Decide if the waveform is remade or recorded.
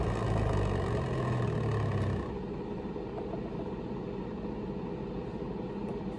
recorded